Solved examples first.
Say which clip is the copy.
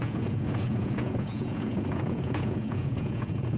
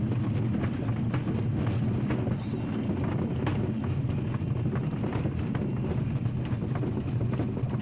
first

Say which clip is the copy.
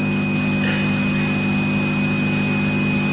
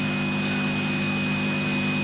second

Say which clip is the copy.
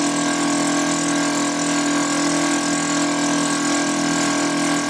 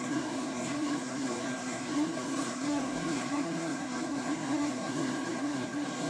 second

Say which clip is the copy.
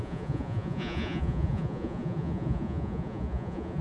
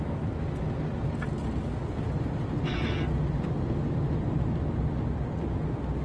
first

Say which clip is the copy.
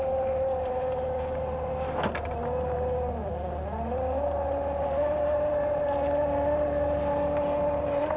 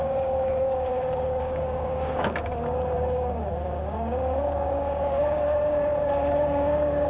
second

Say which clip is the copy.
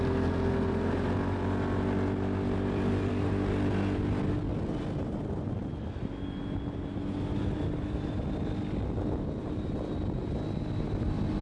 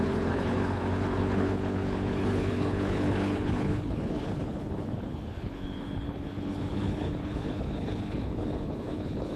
second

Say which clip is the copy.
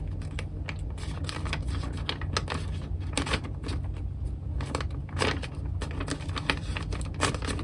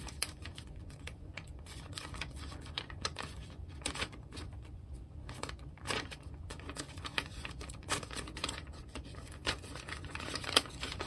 second